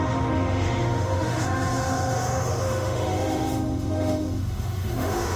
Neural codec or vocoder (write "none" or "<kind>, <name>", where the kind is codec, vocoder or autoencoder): autoencoder, DAC-VAE